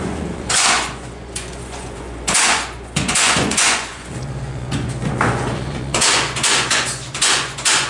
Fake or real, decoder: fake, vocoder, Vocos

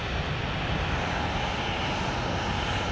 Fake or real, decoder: real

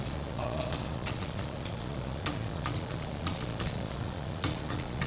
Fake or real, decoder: fake, vocoder, Vocos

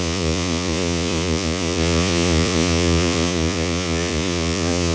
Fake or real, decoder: fake, vocoder, Vocos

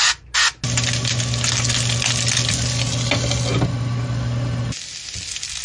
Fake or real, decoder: real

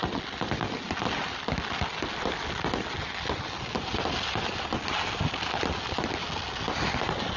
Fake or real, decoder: real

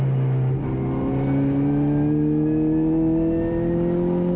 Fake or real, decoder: real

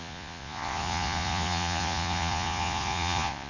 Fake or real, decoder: fake, vocoder, Vocos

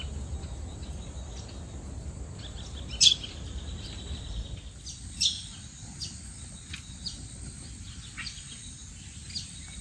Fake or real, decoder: real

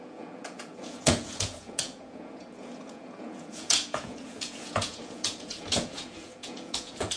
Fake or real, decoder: fake, vocoder, Vocos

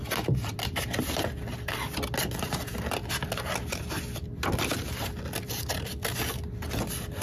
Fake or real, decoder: real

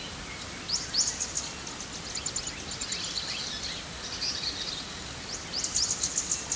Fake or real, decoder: real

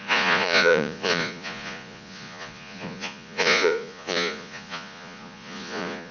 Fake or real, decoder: fake, vocoder, Vocos